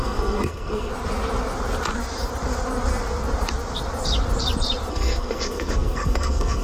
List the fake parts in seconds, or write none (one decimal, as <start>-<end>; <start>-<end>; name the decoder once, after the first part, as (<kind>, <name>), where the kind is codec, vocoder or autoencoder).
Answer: 0.0-0.9 (codec, SNAC); 4.9-6.6